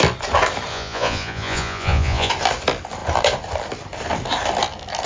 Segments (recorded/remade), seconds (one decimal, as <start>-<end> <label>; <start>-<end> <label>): 0.0-0.7 recorded; 0.7-2.3 remade; 2.3-5.1 recorded